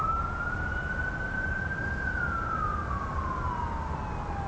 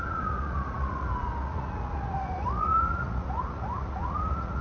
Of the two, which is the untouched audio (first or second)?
first